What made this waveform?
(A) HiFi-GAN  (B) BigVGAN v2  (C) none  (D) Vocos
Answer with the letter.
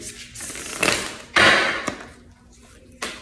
C